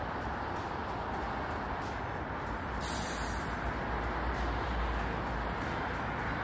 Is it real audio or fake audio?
real